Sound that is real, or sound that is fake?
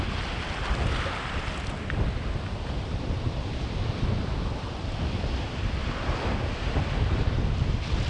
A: real